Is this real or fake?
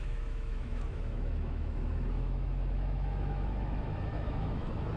fake